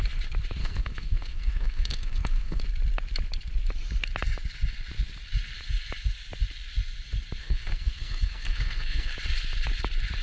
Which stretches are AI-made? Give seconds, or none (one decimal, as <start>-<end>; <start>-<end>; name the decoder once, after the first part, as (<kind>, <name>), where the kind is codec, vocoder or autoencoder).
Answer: 0.6-2.6 (codec, SNAC); 7.4-9.1